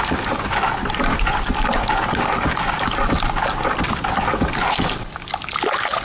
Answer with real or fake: real